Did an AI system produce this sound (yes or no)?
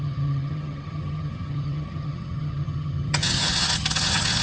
yes